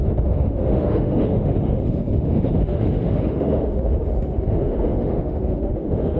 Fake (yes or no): yes